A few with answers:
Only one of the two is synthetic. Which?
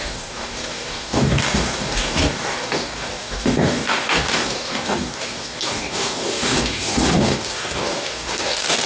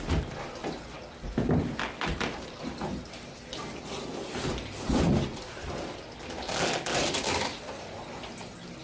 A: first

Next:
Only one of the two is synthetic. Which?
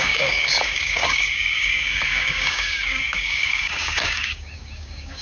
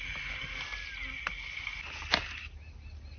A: first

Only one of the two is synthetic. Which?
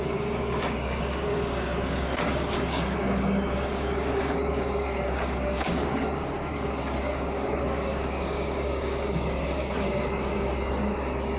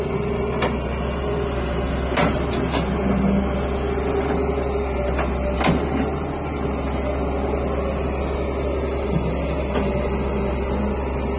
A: first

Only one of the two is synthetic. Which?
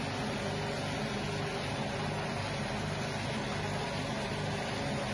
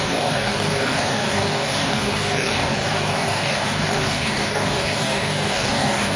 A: second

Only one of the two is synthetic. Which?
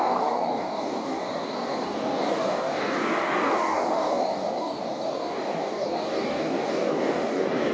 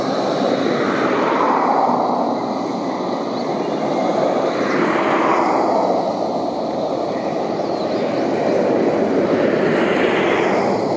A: first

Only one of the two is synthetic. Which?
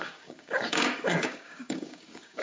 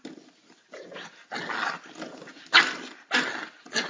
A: first